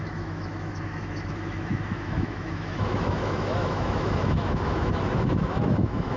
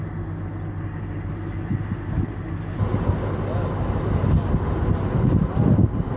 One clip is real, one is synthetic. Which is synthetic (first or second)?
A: first